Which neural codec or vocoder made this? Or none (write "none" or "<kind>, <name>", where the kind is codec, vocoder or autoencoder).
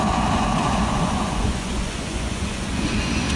vocoder, Vocos